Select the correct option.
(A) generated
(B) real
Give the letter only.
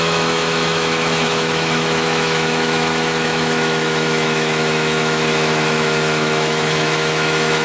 A